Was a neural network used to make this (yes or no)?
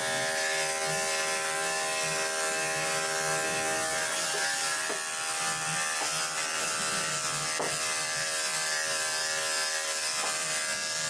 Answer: no